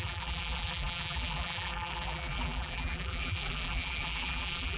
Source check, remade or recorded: remade